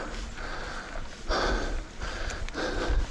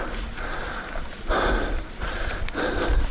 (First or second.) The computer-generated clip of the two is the second